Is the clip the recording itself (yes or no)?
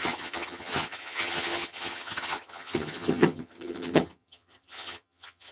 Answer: no